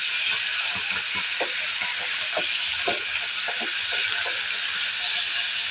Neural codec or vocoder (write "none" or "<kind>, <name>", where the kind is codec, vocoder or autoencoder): none